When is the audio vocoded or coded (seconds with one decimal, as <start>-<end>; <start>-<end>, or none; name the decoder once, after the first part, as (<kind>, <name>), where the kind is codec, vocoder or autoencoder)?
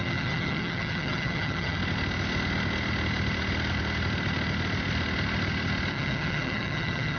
0.0-1.8 (vocoder, HiFi-GAN); 5.9-7.2